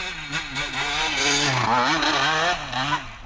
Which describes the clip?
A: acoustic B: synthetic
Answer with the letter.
A